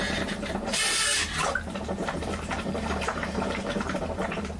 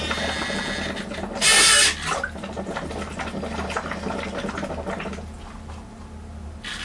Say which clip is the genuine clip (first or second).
second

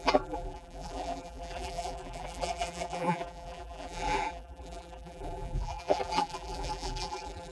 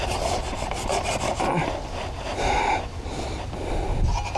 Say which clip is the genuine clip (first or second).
second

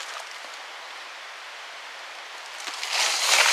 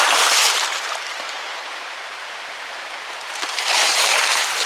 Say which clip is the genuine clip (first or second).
first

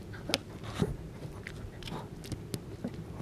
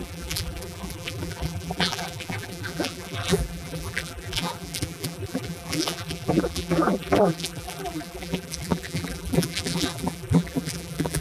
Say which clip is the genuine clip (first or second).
first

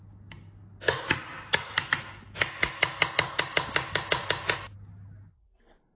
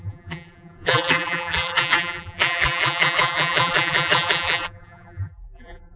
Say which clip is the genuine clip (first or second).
first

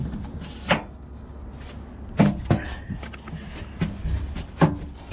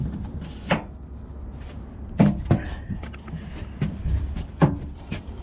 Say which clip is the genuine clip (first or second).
first